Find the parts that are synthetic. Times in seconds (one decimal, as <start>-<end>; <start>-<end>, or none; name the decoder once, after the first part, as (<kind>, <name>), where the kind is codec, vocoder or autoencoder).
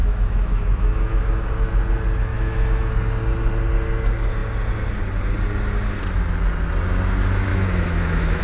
0.0-1.5 (autoencoder, DAC-VAE); 2.3-2.9; 7.5-8.4